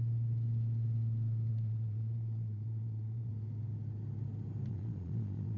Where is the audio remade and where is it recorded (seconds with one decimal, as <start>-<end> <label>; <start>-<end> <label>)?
0.0-1.5 recorded; 1.5-3.3 remade; 3.3-4.7 recorded; 4.7-5.6 remade